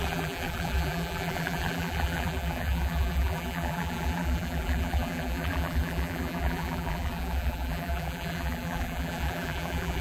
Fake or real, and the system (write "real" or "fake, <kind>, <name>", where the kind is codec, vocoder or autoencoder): fake, vocoder, BigVGAN v2